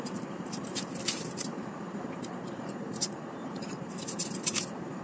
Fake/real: fake